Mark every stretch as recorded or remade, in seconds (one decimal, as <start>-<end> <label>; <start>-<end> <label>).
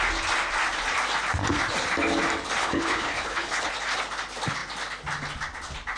0.0-2.6 recorded; 2.6-3.7 remade; 3.7-6.0 recorded